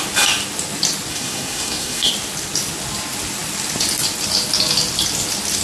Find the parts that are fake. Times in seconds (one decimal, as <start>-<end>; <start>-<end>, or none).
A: 1.1-2.1